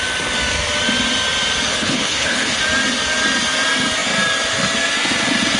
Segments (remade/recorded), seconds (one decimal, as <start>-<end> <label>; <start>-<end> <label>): 0.0-1.7 recorded; 1.7-2.6 remade; 2.6-5.6 recorded